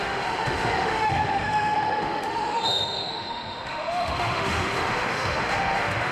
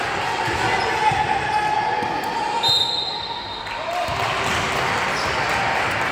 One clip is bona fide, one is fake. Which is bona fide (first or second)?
second